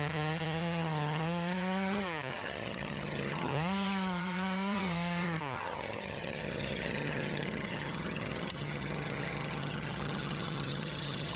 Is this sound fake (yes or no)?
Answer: yes